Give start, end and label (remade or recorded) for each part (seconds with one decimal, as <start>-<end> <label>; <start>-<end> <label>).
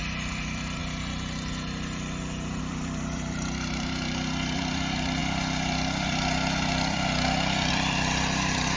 0.0-0.8 remade; 0.8-2.6 recorded; 2.6-8.8 remade